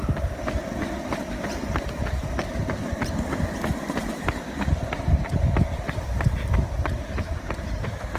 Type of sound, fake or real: real